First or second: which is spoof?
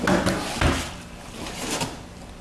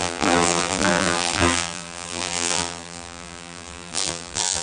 second